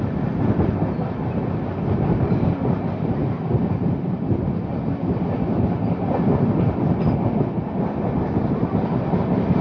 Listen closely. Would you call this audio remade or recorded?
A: recorded